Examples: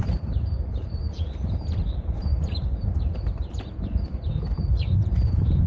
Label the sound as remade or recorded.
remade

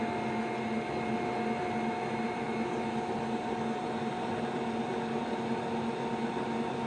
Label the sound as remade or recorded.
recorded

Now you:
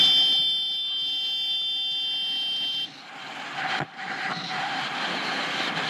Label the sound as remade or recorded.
recorded